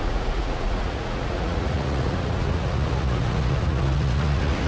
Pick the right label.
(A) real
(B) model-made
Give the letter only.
B